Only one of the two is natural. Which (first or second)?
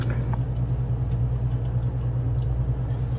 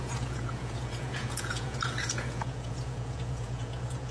first